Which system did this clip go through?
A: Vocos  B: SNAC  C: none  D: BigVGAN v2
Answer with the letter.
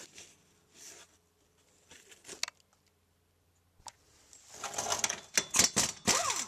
C